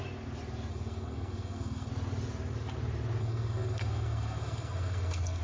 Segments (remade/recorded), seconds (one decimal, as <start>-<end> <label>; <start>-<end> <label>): 0.0-0.7 recorded; 0.7-1.9 remade; 1.9-3.2 recorded; 3.2-5.4 remade